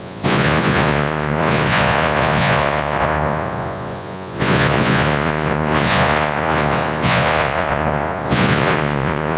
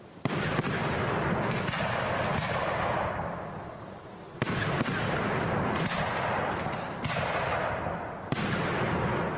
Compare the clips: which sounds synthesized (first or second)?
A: first